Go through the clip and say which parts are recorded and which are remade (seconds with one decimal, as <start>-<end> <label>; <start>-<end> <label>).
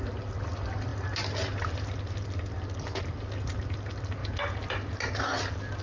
0.0-5.8 recorded